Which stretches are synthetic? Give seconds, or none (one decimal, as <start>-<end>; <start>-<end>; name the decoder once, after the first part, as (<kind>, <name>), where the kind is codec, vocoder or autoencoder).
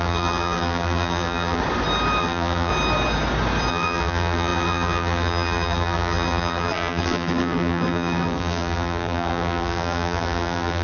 0.0-1.6 (vocoder, BigVGAN v2); 2.2-2.7; 3.7-10.8